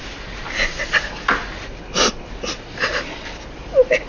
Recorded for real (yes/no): yes